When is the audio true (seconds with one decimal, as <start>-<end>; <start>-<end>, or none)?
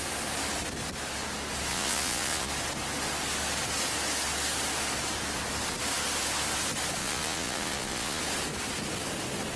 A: 0.0-1.7; 2.5-7.0; 8.2-9.6